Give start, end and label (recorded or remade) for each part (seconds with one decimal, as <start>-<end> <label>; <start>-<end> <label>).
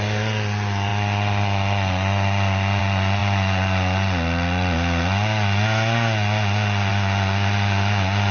0.0-8.3 recorded